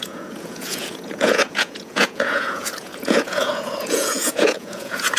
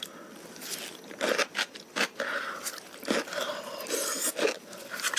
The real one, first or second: second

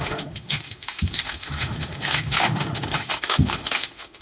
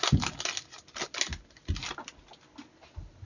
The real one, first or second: second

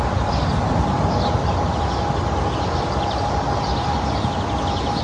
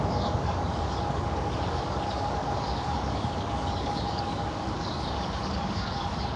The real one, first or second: first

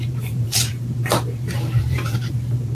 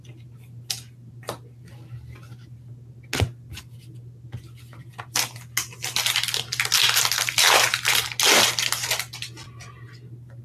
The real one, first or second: second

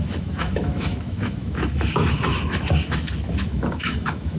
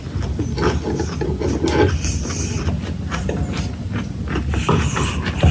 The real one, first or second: second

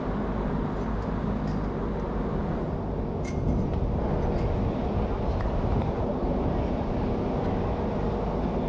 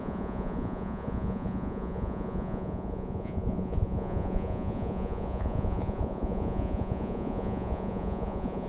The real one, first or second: first